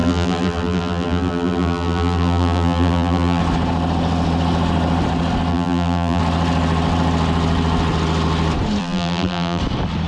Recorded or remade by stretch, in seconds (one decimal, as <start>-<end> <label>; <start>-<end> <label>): 0.0-3.4 remade; 3.4-5.5 recorded; 5.5-6.2 remade; 6.2-8.8 recorded; 8.8-9.6 remade; 9.6-10.1 recorded